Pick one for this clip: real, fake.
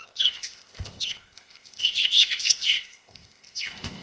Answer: fake